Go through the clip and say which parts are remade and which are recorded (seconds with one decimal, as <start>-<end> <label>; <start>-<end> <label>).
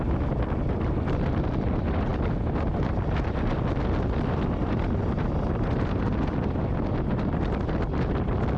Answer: 0.0-8.6 recorded